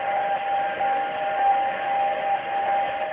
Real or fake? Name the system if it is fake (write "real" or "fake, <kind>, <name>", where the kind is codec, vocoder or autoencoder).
real